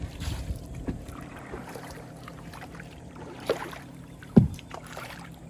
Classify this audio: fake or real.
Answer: fake